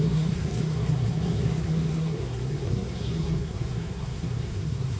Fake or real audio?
fake